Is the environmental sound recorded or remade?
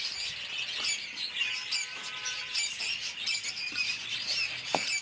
recorded